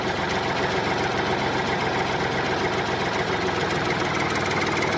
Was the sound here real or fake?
real